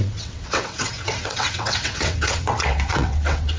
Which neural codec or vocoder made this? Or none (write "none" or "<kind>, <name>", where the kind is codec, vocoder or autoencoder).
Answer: vocoder, WaveNeXt